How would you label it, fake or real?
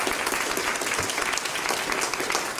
real